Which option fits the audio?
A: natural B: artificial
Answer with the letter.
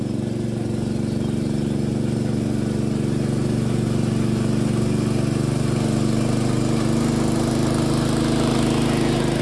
A